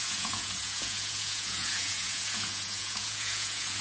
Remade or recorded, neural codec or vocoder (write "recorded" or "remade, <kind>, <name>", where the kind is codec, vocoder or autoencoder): remade, vocoder, Vocos